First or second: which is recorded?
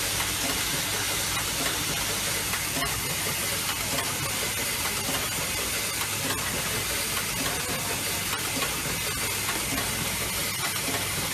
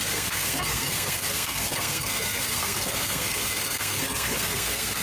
first